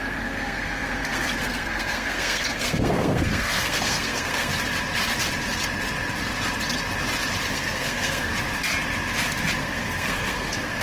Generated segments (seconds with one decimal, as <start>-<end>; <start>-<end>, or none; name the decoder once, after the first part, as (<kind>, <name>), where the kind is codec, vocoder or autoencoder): 0.0-4.5 (codec, SNAC); 7.5-8.3; 9.6-10.8